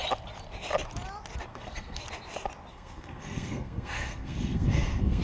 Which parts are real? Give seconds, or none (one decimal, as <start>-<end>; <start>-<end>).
0.0-1.5; 2.0-2.7

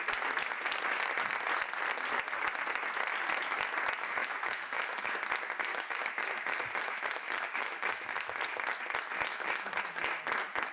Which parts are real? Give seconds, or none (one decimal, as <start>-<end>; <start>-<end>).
0.0-4.2; 5.1-5.7; 8.4-9.3; 9.8-10.7

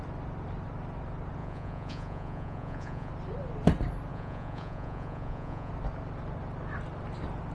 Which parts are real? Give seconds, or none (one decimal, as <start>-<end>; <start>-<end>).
0.0-1.4; 3.1-4.1; 5.7-7.5

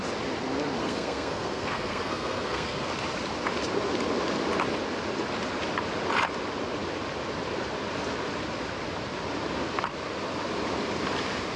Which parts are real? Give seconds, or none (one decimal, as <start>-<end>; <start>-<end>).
0.0-0.8; 2.9-11.6

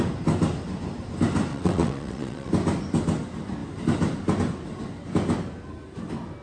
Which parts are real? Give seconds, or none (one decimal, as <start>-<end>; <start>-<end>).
0.0-1.5; 2.5-6.4

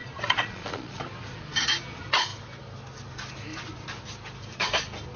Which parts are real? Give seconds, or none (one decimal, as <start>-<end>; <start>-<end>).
1.0-5.2